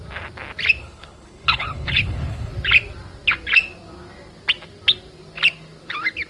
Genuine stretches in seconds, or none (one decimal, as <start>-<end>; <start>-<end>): 0.0-0.8; 2.5-6.3